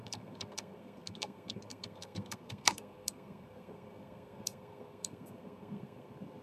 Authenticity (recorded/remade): remade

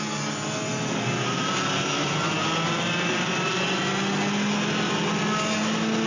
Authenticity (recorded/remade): recorded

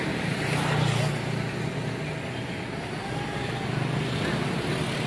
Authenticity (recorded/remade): recorded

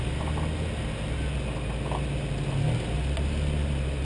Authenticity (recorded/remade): recorded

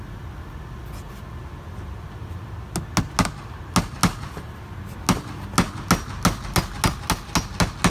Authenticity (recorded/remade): recorded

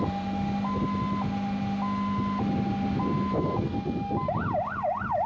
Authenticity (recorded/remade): recorded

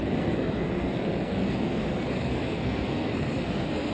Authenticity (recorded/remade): remade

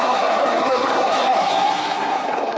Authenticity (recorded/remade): remade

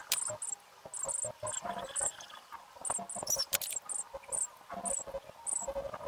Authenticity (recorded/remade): recorded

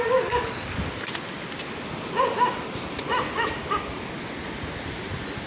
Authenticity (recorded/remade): recorded